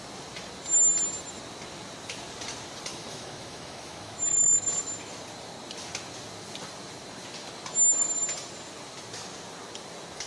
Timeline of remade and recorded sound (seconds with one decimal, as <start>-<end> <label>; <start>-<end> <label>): 0.0-2.9 recorded; 2.9-4.9 remade; 4.9-10.3 recorded